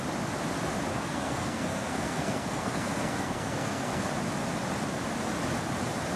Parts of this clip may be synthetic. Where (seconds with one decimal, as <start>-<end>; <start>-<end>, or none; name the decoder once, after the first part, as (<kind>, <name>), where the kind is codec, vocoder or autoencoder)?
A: 0.9-4.1 (codec, SNAC)